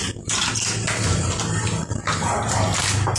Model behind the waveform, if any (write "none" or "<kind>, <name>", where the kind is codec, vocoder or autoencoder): none